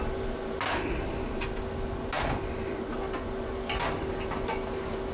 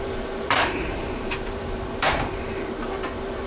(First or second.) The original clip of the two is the first